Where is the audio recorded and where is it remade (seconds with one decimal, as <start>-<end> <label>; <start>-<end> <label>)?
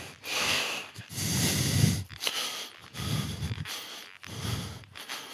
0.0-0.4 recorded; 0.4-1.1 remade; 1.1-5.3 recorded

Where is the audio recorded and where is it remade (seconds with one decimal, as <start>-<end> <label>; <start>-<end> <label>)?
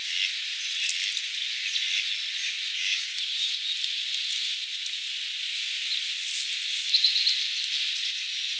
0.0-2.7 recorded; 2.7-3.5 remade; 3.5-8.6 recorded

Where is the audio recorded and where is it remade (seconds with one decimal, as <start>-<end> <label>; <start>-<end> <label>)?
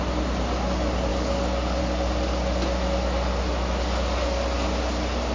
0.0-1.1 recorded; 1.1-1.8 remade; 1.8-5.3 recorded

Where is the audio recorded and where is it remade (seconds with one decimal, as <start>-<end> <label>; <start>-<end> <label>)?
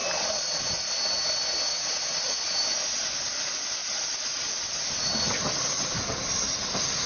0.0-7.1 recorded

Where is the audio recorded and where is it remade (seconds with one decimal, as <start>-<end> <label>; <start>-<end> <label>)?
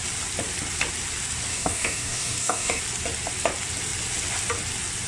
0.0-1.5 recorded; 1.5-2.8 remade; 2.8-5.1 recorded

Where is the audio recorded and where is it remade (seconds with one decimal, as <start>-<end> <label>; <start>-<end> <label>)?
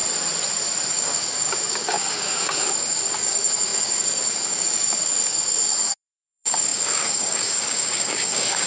0.0-0.9 recorded; 0.9-8.7 remade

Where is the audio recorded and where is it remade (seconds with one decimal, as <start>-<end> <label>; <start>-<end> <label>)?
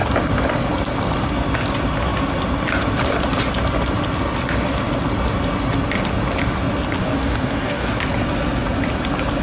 0.0-7.0 recorded; 7.0-8.0 remade; 8.0-9.4 recorded